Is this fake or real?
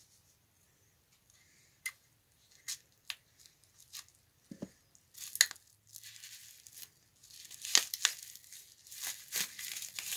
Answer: real